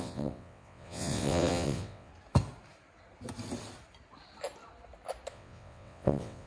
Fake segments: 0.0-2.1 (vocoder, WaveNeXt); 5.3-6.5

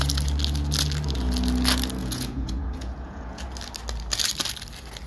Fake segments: 2.0-3.4 (vocoder, Vocos)

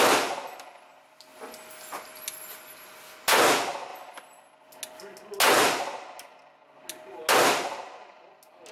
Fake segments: none